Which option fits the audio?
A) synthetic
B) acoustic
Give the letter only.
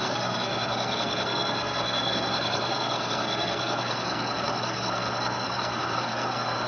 A